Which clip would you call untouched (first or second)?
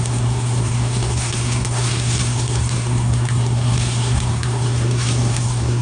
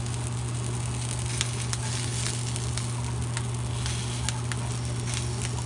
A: second